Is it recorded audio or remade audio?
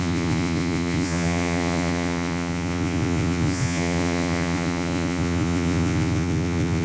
remade